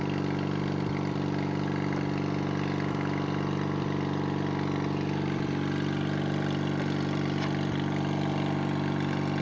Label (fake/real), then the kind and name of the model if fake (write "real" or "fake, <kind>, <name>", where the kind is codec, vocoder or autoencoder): real